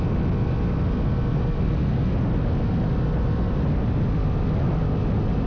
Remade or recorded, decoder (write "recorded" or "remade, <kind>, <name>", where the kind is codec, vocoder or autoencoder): recorded